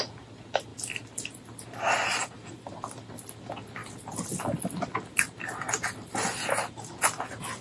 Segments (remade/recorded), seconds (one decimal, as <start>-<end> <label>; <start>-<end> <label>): 0.0-7.6 recorded